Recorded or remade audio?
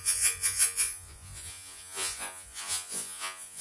remade